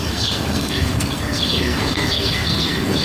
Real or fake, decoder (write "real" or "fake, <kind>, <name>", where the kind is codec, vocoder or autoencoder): fake, codec, SNAC